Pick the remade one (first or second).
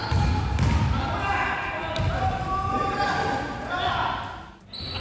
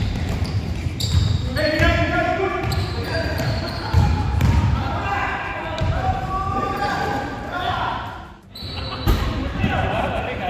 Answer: second